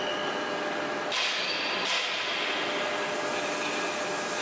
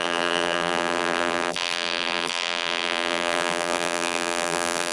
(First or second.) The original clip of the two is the first